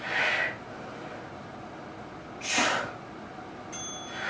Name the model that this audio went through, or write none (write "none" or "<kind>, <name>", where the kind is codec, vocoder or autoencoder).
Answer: none